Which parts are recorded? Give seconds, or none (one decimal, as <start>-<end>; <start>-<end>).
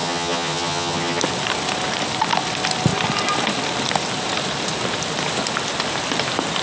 1.2-6.6